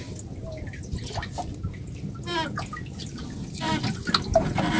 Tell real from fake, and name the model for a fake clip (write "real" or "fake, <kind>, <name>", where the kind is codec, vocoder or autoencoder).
real